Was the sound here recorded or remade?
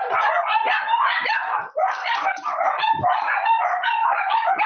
remade